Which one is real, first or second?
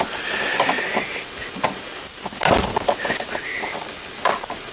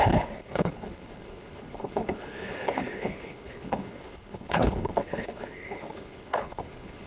first